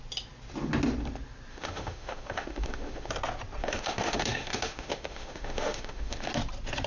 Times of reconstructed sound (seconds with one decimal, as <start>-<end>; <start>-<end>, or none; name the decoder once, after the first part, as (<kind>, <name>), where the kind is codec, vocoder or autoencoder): 1.5-3.1 (autoencoder, DAC-VAE); 3.6-6.3